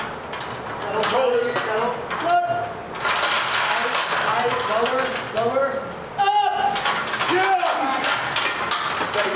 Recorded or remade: recorded